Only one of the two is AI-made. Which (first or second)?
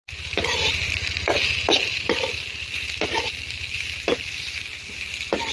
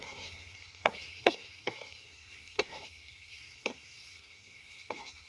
second